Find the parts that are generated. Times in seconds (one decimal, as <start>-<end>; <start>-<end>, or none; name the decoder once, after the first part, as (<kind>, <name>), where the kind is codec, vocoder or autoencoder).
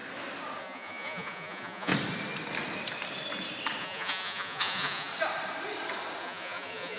0.6-1.9 (vocoder, Vocos); 3.8-5.1; 6.2-7.0